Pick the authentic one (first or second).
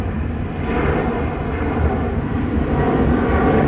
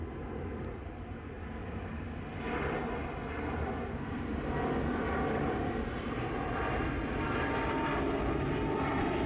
second